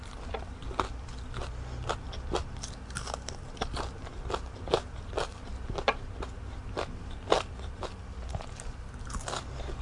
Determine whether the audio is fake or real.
real